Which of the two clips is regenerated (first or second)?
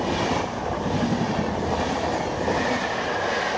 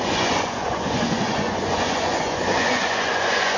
second